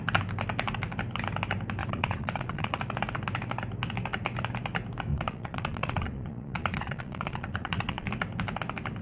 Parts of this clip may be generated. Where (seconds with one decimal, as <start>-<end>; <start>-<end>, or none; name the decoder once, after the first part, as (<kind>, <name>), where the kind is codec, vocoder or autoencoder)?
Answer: 1.8-2.8 (vocoder, Vocos); 5.1-8.1